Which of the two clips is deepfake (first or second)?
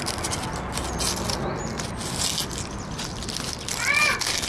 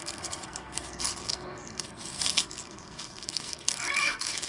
second